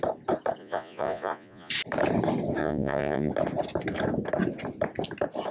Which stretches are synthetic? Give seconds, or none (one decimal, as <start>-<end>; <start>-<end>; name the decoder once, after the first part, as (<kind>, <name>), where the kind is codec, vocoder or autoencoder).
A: 0.6-1.7 (vocoder, Vocos); 2.6-3.3